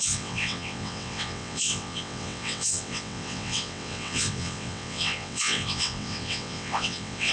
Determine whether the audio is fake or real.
fake